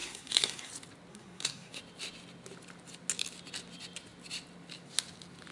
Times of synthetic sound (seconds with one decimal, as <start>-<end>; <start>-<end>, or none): 0.0-0.7; 1.1-1.8